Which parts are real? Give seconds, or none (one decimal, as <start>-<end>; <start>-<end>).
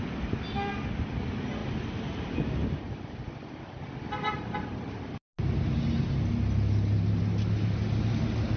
0.0-8.6